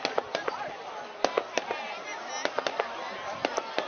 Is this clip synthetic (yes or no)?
no